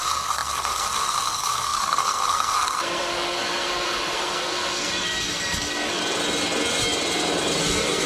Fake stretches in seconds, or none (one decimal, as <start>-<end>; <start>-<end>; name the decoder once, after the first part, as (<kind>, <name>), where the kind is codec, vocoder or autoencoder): 0.0-6.0 (codec, SNAC); 7.6-8.1